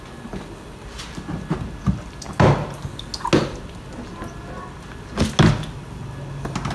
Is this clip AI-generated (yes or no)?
no